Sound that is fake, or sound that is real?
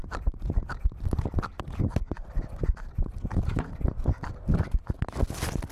real